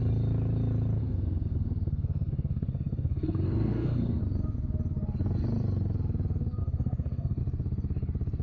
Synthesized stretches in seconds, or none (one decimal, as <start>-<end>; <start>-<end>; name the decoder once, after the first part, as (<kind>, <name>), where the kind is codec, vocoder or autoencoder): 1.0-4.2 (codec, SNAC); 6.6-7.4